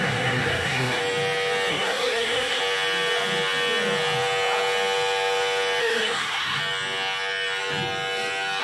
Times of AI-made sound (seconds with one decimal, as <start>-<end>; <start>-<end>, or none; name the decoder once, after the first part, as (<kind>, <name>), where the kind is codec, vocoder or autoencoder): 0.0-1.0 (codec, SNAC); 1.7-2.6; 5.8-6.6